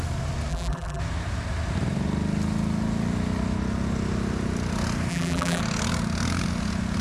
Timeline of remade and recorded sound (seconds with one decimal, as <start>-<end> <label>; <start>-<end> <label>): 0.0-0.5 recorded; 0.5-1.0 remade; 1.0-5.1 recorded; 5.1-5.6 remade; 5.6-7.0 recorded